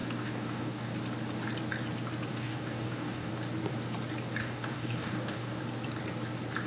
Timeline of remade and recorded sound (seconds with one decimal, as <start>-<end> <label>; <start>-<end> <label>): 0.0-0.9 remade; 0.9-2.3 recorded; 2.3-3.3 remade; 3.3-4.4 recorded; 4.4-5.6 remade; 5.6-6.7 recorded